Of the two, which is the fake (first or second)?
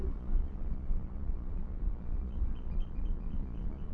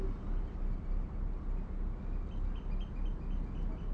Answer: first